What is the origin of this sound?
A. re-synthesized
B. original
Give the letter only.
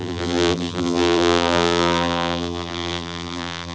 A